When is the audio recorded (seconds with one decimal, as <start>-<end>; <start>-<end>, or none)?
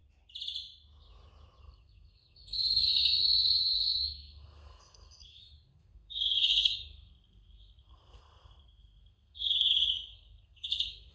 0.0-1.6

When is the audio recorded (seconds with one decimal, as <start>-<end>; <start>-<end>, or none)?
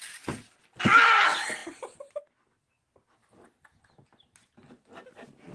0.0-5.5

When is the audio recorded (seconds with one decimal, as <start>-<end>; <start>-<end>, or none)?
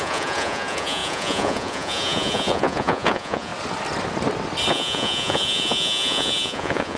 3.5-4.7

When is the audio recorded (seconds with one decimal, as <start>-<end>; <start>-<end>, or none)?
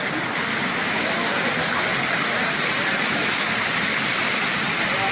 0.0-5.1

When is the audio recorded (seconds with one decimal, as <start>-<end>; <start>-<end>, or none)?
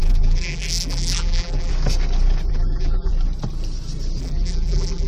1.7-2.5; 3.1-4.2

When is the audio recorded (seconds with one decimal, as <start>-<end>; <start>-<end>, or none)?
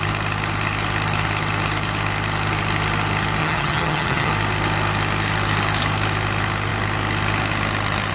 0.0-3.4; 4.3-8.1